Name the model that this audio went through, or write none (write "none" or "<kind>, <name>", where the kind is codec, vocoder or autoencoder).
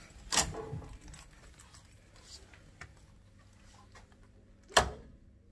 none